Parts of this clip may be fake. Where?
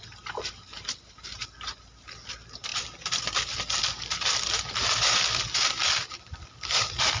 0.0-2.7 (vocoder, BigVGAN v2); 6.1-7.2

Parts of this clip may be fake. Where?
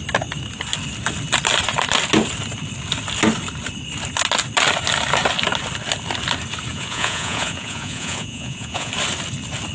6.7-8.9 (vocoder, Vocos)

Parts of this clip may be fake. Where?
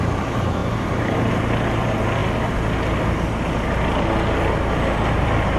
none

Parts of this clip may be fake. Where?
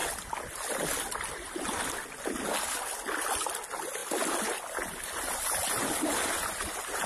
none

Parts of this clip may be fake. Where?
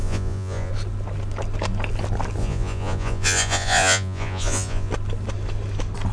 0.0-0.7 (vocoder, Vocos); 2.4-4.9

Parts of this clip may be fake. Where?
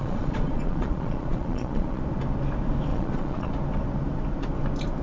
0.0-2.0 (vocoder, Vocos); 2.9-3.5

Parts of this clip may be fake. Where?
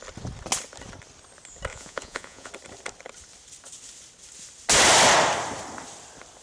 1.7-2.5 (vocoder, Vocos)